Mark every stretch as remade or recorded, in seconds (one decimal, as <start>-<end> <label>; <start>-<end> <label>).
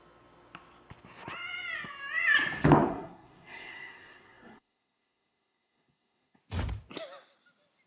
0.0-2.9 recorded; 2.9-6.4 remade; 6.4-7.9 recorded